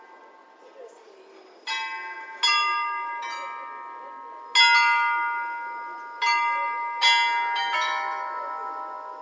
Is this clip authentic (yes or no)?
yes